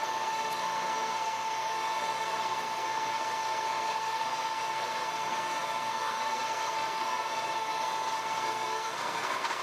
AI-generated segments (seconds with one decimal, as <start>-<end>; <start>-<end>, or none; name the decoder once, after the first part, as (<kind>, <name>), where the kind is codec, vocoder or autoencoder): 0.0-9.6 (codec, SNAC)